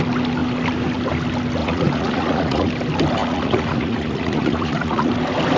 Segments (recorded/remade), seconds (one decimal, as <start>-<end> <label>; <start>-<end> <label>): 0.0-1.6 recorded; 1.6-2.7 remade; 2.7-3.2 recorded; 3.2-5.1 remade; 5.1-5.6 recorded